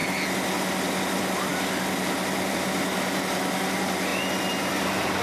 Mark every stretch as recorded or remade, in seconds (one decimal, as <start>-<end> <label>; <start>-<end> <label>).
0.0-5.2 recorded